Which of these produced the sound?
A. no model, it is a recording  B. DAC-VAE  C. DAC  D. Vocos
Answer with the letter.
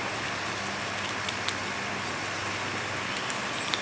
A